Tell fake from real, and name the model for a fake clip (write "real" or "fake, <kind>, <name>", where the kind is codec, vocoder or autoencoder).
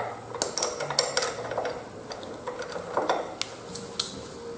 real